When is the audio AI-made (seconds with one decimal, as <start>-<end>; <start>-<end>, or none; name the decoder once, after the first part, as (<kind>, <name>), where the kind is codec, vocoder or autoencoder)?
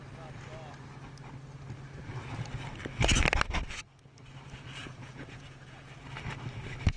4.8-5.9 (vocoder, Vocos)